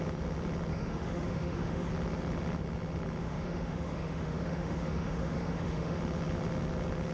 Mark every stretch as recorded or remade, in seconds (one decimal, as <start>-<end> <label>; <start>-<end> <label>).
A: 0.0-0.7 recorded; 0.7-1.9 remade; 1.9-3.2 recorded; 3.2-6.0 remade; 6.0-7.1 recorded